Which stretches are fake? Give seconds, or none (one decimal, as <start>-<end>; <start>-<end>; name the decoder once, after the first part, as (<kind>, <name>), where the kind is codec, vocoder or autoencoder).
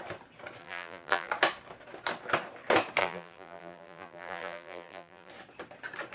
0.6-1.3 (vocoder, BigVGAN v2); 3.0-5.3